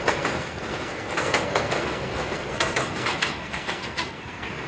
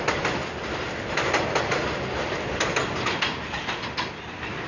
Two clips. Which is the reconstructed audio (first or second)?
first